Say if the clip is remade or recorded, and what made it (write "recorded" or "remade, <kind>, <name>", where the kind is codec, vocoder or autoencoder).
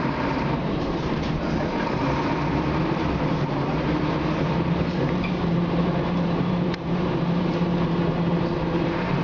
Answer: remade, vocoder, BigVGAN v2